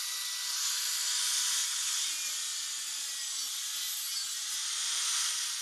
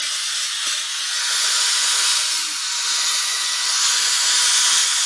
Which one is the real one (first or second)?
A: first